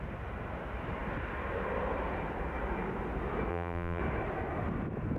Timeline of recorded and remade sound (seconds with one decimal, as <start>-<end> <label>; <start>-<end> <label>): 0.0-3.5 recorded; 3.5-4.0 remade; 4.0-5.2 recorded